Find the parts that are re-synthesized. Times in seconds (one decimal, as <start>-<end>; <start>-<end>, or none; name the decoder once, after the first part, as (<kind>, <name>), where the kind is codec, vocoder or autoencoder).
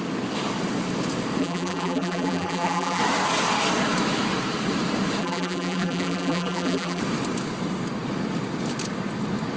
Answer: 1.4-3.0 (vocoder, BigVGAN v2); 5.2-7.0